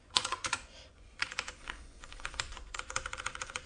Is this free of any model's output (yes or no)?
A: no